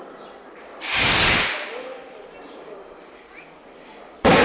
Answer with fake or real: real